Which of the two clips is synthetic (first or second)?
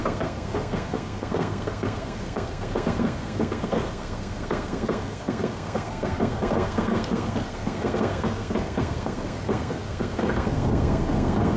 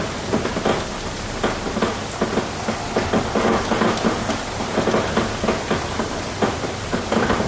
first